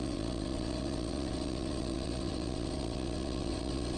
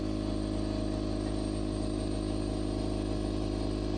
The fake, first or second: first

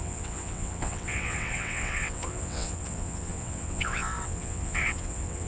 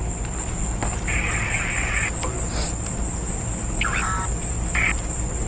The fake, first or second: first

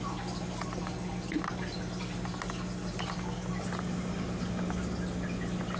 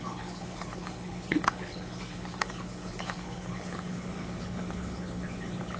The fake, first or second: second